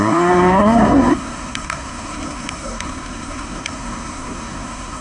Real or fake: fake